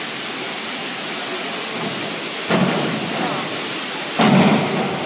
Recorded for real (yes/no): yes